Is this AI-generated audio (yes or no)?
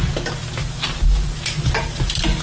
no